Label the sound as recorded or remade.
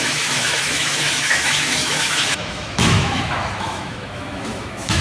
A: remade